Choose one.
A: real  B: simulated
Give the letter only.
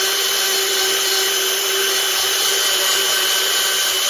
B